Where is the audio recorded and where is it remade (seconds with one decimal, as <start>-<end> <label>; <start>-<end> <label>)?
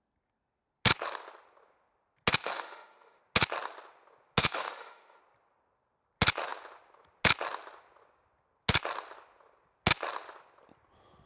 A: 0.0-2.4 recorded; 2.4-3.2 remade; 3.2-4.4 recorded; 4.4-5.2 remade; 5.2-11.3 recorded